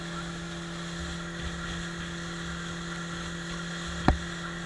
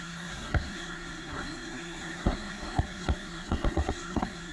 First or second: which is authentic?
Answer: first